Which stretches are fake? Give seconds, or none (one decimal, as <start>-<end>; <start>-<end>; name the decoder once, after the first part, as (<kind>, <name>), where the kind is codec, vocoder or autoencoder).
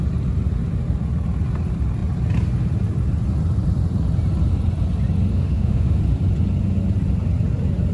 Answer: 5.3-6.0 (autoencoder, DAC-VAE)